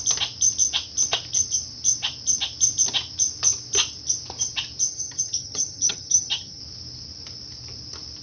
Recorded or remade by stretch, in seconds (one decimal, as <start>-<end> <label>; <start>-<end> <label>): 0.0-4.9 recorded; 4.9-6.6 remade; 6.6-8.2 recorded